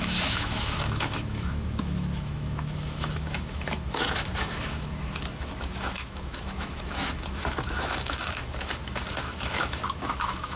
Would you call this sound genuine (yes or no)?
no